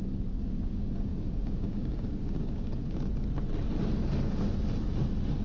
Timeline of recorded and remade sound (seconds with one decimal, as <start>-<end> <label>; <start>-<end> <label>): 0.0-2.7 remade; 2.7-5.4 recorded